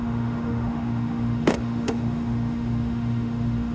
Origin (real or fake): fake